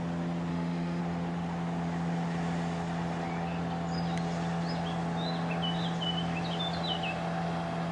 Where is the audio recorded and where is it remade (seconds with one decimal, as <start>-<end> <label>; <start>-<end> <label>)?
0.0-0.5 recorded; 0.5-1.0 remade; 1.0-7.9 recorded